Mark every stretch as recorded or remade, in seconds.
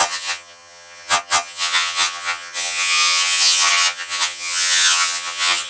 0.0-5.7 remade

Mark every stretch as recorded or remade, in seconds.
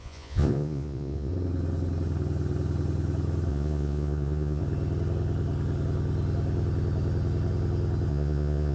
0.0-1.3 remade; 1.3-3.5 recorded; 3.5-4.6 remade; 4.6-8.1 recorded; 8.1-8.7 remade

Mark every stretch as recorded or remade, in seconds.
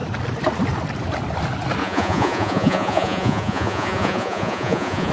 0.0-1.8 recorded; 1.8-5.1 remade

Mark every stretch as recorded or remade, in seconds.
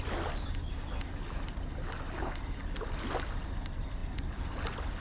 0.0-5.0 recorded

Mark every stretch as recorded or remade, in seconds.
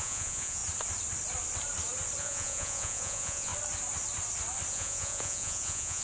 0.0-0.6 remade; 0.6-2.2 recorded; 2.2-3.5 remade; 3.5-4.7 recorded; 4.7-6.0 remade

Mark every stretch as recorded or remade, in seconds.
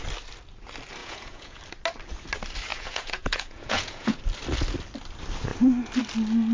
0.0-1.0 recorded; 1.0-1.6 remade; 1.6-2.7 recorded; 2.7-4.2 remade; 4.2-6.5 recorded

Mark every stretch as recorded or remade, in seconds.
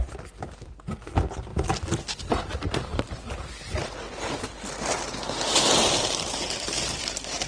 0.0-7.5 recorded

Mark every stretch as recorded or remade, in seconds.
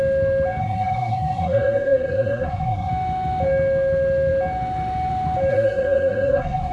0.0-0.6 recorded; 0.6-2.9 remade; 2.9-5.5 recorded; 5.5-6.7 remade